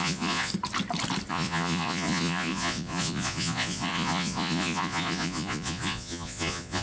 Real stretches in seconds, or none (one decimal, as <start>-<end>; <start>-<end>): 0.5-1.3